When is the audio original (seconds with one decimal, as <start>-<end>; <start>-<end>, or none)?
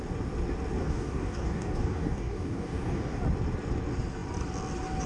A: 0.0-0.8; 3.2-5.1